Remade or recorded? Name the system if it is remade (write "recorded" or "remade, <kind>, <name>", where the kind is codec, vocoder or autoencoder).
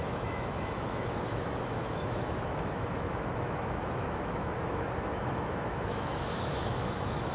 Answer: remade, autoencoder, DAC-VAE